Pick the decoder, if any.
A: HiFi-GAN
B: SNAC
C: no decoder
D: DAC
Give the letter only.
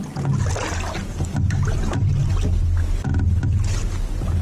C